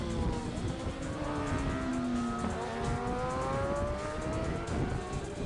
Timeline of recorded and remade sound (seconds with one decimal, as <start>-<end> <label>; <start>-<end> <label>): 0.0-0.4 recorded; 0.4-1.1 remade; 1.1-5.5 recorded